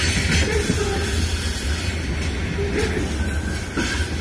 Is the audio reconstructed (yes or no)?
no